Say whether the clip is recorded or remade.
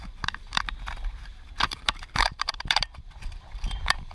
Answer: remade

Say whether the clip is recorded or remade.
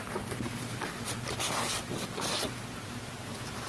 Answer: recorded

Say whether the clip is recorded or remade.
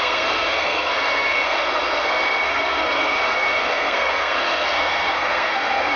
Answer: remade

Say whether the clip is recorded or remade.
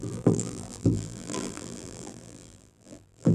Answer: remade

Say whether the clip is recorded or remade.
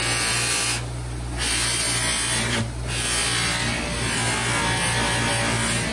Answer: recorded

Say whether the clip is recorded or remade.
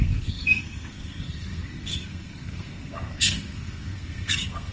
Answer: remade